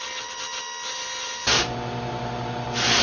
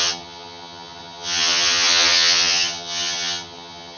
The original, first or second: first